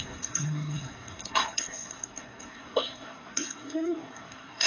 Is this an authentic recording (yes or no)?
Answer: no